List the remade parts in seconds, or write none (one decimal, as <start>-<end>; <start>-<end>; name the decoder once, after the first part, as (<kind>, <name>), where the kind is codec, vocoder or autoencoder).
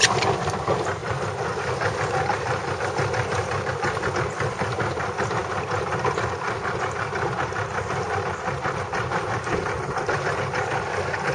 none